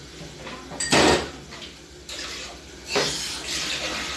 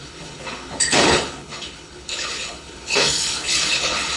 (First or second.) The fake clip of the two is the second